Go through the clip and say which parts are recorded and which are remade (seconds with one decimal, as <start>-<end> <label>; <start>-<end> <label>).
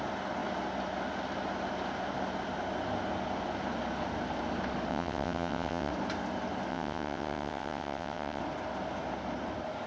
0.0-4.9 recorded; 4.9-5.9 remade; 5.9-6.7 recorded; 6.7-8.4 remade; 8.4-9.9 recorded